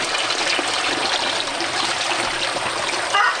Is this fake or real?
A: real